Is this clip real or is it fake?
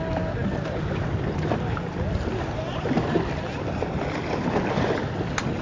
real